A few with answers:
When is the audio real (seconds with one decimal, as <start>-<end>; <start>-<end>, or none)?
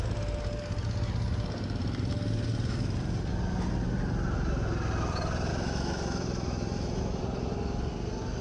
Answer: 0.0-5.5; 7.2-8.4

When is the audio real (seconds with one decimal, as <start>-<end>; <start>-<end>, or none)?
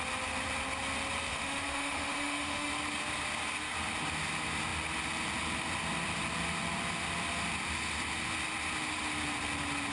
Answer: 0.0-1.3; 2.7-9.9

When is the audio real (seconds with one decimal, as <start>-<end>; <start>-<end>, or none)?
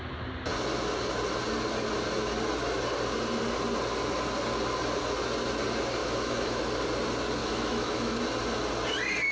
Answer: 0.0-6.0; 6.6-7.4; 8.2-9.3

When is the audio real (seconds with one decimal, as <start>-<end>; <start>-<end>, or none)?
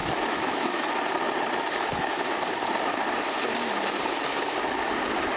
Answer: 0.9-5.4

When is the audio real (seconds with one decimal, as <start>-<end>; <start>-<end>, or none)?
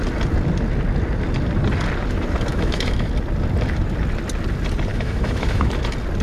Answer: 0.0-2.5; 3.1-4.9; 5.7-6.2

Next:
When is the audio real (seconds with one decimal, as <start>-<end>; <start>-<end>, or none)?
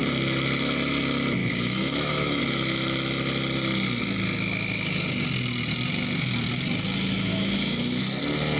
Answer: 0.0-1.4; 2.4-7.3; 8.0-8.6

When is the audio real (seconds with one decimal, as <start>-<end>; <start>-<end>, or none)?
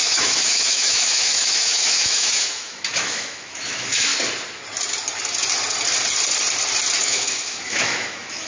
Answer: 4.1-7.0